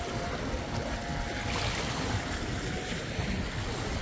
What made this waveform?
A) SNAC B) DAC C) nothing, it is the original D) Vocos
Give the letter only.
C